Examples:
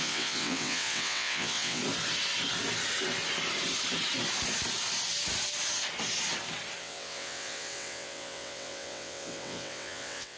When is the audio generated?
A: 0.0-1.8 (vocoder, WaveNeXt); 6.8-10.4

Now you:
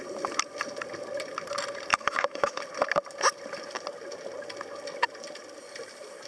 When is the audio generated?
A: 1.9-2.6 (autoencoder, DAC-VAE)

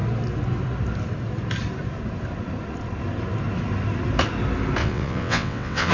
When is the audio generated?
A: 4.8-5.9 (vocoder, WaveNeXt)

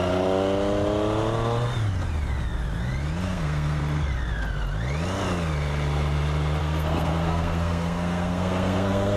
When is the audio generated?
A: 3.2-3.8 (codec, SNAC); 6.6-9.2

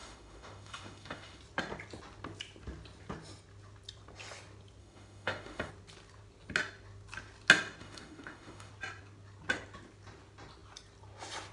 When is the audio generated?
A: 0.0-1.4 (autoencoder, DAC-VAE); 4.8-5.7; 7.8-8.7